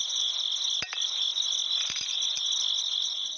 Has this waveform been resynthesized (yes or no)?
no